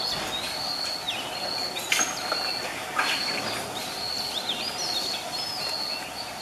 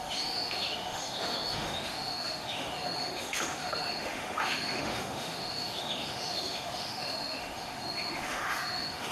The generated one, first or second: second